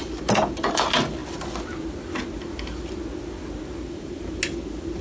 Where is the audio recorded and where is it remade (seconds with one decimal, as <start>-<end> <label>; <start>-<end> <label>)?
0.0-5.0 recorded